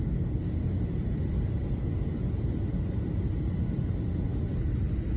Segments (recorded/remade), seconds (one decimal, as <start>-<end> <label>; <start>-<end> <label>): 0.0-5.2 recorded